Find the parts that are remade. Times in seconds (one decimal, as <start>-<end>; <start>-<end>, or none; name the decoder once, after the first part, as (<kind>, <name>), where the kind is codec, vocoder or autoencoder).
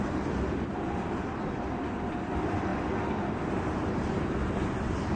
none